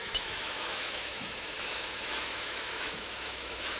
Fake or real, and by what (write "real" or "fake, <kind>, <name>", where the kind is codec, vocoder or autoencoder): fake, autoencoder, DAC-VAE